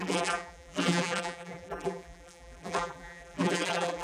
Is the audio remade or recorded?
remade